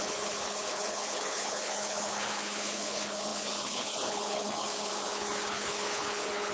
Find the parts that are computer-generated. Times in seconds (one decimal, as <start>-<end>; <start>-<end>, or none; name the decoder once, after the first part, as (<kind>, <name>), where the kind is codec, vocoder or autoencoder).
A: 0.0-6.5 (codec, HILCodec)